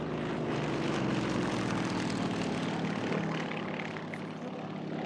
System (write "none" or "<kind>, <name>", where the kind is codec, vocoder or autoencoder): none